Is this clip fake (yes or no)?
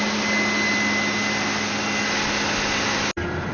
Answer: no